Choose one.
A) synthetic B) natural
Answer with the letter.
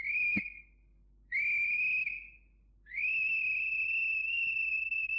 B